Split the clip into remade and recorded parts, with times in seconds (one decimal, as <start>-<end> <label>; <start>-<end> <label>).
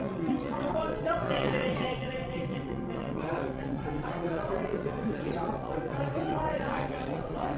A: 0.0-7.6 remade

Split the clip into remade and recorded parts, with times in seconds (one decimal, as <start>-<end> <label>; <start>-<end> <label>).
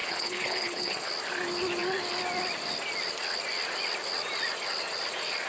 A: 0.0-1.1 remade; 1.1-5.5 recorded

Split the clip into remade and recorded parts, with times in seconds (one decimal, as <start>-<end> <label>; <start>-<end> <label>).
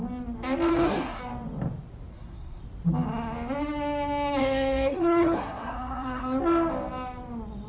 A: 0.0-0.7 recorded; 0.7-1.2 remade; 1.2-2.1 recorded; 2.1-2.6 remade; 2.6-4.4 recorded; 4.4-6.4 remade; 6.4-7.7 recorded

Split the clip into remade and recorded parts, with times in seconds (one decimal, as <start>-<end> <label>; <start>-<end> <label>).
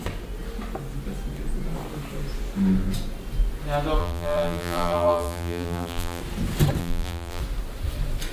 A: 0.0-4.0 recorded; 4.0-6.2 remade; 6.2-6.8 recorded; 6.8-7.4 remade; 7.4-8.3 recorded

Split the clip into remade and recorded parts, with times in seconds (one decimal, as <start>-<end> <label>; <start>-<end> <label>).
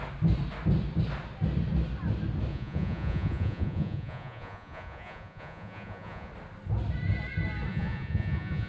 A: 0.0-2.5 recorded; 2.5-6.3 remade; 6.3-7.7 recorded; 7.7-8.7 remade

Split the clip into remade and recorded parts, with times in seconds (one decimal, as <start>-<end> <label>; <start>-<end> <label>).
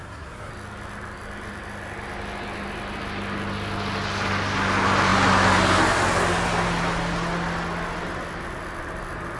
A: 0.0-0.5 remade; 0.5-9.4 recorded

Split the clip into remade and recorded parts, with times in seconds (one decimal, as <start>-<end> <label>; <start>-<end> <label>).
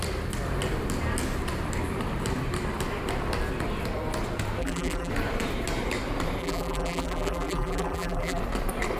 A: 0.0-4.6 recorded; 4.6-5.1 remade; 5.1-6.4 recorded; 6.4-8.4 remade; 8.4-9.0 recorded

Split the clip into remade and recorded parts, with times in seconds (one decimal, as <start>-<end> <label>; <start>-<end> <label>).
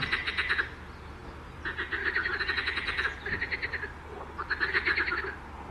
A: 0.0-5.7 recorded